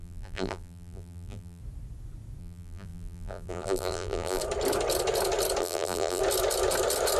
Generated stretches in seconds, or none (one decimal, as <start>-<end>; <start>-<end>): 0.0-1.6; 2.4-4.4; 5.6-6.2